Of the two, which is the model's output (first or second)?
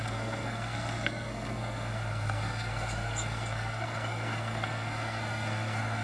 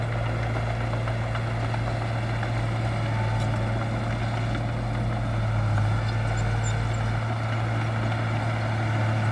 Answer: first